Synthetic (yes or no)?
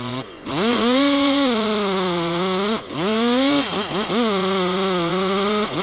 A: yes